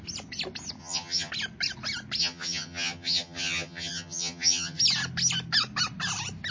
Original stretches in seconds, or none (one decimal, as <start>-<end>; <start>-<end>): 0.0-0.8; 1.3-2.2; 4.8-6.5